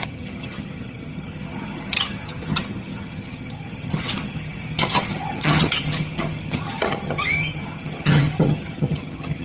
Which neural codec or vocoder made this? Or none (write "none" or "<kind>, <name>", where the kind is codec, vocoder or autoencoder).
vocoder, HiFi-GAN